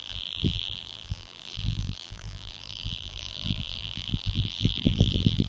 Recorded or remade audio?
remade